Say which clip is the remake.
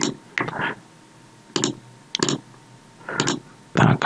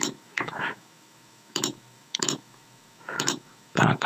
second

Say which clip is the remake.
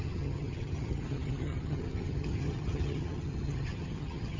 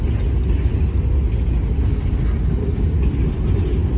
first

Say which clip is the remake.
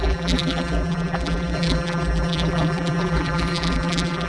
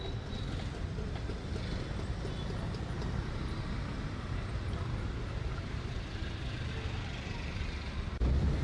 first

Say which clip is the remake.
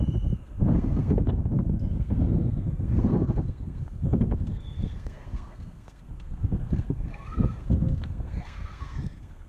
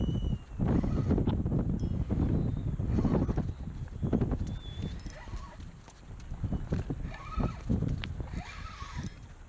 first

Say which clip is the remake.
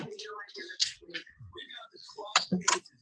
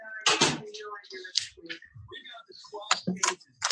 first